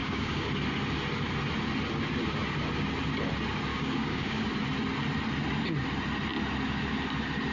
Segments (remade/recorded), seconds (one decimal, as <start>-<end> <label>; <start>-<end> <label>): 0.0-0.5 remade; 0.5-3.7 recorded; 3.7-4.5 remade; 4.5-7.5 recorded